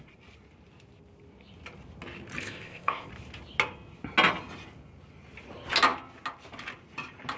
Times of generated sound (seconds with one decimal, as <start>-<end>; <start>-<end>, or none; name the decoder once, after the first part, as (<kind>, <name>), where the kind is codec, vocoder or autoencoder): 2.4-3.1 (codec, ZipCodec)